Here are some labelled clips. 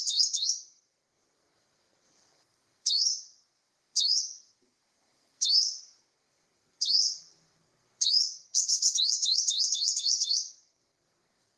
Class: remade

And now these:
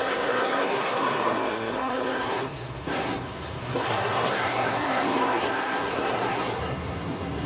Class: remade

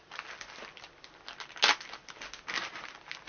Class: recorded